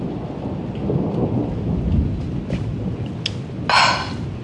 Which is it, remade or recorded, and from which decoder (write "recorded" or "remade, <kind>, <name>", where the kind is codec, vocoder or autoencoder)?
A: recorded